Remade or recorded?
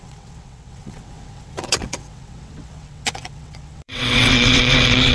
remade